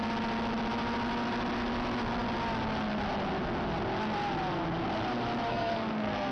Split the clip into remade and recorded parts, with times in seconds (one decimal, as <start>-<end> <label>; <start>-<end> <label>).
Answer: 0.0-5.5 recorded; 5.5-6.3 remade